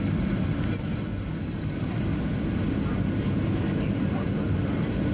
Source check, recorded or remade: recorded